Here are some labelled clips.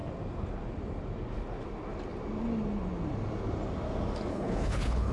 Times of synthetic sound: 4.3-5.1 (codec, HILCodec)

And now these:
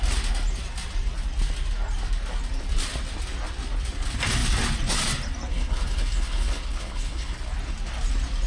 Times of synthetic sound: 5.5-7.4 (codec, HILCodec)

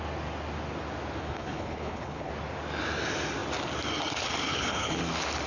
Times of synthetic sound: 1.2-2.3 (codec, HILCodec); 4.5-5.0

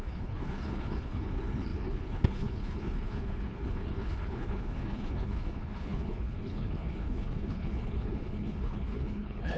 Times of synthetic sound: 0.0-9.6 (codec, HILCodec)

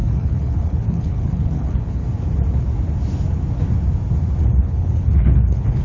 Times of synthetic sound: 0.0-2.0 (codec, HILCodec); 4.4-5.8

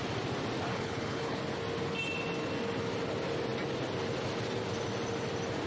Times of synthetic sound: 0.7-1.4 (codec, HILCodec)